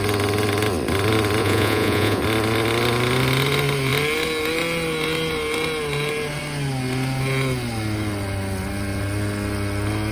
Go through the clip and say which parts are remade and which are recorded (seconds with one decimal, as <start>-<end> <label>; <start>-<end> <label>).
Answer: 0.0-1.4 recorded; 1.4-2.2 remade; 2.2-10.1 recorded